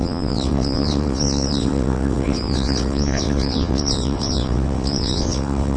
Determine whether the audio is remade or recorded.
remade